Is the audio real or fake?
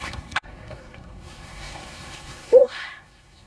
fake